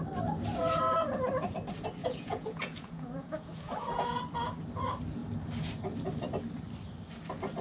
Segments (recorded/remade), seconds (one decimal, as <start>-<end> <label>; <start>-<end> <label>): 0.0-2.0 recorded; 2.0-4.2 remade; 4.2-7.6 recorded